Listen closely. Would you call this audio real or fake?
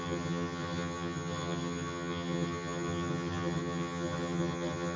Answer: fake